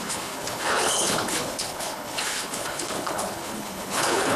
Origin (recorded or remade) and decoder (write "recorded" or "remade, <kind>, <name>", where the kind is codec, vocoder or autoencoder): remade, codec, HILCodec